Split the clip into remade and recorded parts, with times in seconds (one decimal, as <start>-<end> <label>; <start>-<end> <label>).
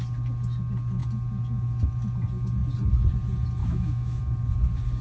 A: 0.0-3.6 recorded; 3.6-4.2 remade; 4.2-5.0 recorded